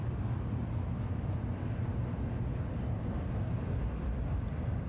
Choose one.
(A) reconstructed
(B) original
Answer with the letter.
B